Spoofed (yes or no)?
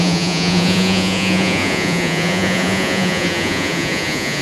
yes